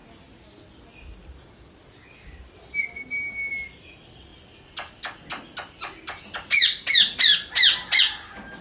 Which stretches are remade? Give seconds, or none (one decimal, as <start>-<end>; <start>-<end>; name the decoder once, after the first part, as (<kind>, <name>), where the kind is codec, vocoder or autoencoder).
none